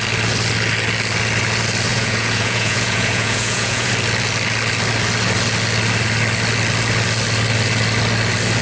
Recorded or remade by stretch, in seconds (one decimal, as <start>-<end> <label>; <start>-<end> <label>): 0.0-1.9 recorded; 1.9-3.9 remade; 3.9-8.6 recorded